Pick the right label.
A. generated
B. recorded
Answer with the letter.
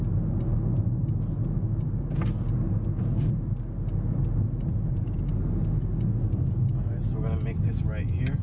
B